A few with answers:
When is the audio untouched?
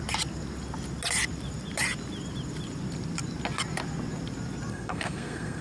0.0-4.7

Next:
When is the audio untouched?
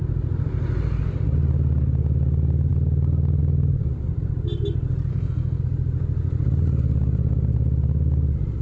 0.0-5.1; 5.6-8.6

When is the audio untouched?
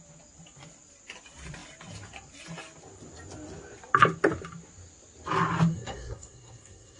0.0-5.7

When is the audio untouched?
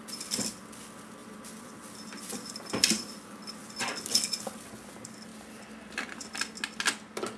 0.0-7.4